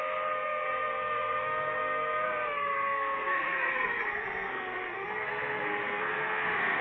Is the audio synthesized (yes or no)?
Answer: yes